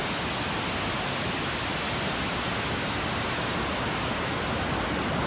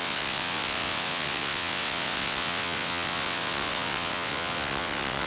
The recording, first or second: first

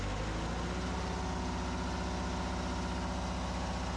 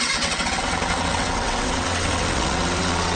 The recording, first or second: first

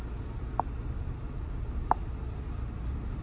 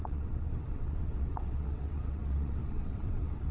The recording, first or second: first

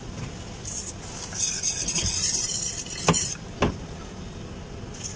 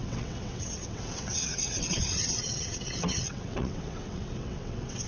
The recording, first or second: first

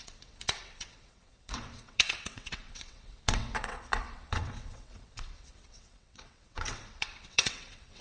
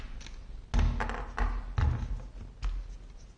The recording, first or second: second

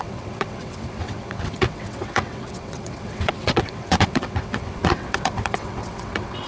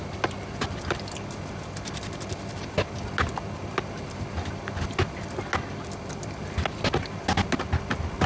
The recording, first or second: second